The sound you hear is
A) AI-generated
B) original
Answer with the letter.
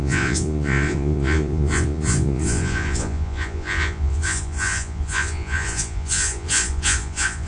A